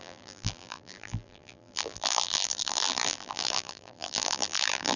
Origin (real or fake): fake